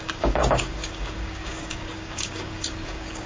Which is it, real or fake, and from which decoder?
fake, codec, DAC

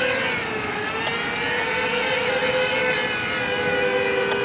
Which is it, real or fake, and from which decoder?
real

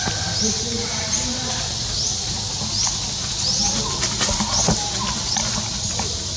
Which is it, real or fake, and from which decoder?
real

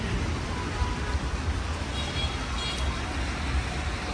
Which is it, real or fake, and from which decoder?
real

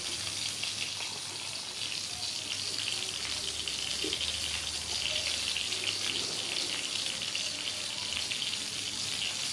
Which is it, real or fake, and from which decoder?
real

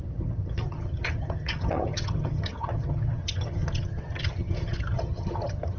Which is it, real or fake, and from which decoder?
fake, vocoder, HiFi-GAN